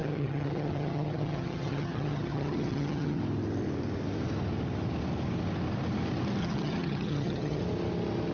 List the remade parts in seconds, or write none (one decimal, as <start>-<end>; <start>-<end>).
0.0-3.2; 6.4-7.6